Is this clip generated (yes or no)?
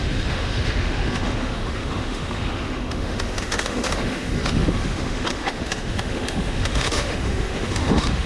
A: yes